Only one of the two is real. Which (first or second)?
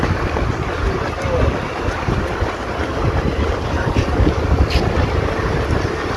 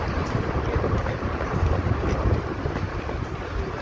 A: first